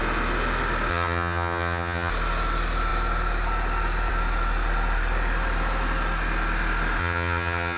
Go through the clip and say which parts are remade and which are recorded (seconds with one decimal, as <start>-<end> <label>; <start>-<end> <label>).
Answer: 0.0-0.9 recorded; 0.9-2.1 remade; 2.1-7.0 recorded; 7.0-7.8 remade